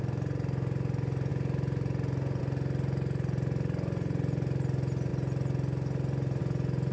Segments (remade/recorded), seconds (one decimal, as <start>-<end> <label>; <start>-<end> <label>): 0.0-6.9 recorded